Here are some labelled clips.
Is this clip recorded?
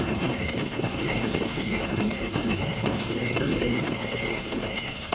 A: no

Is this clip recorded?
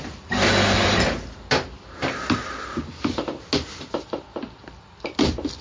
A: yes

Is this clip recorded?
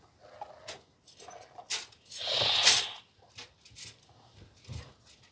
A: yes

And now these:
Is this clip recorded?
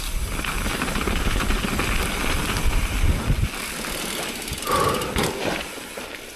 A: yes